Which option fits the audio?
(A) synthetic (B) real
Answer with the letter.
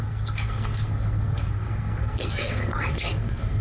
A